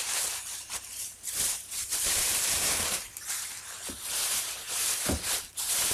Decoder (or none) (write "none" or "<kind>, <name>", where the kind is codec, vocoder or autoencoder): vocoder, BigVGAN v2